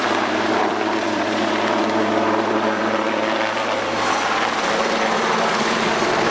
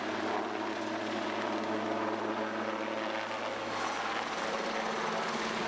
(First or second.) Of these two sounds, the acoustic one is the second